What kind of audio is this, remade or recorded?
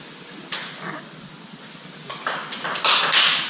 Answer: recorded